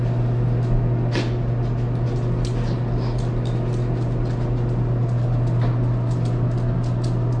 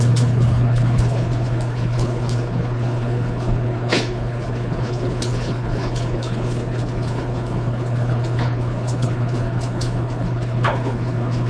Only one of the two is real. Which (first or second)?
first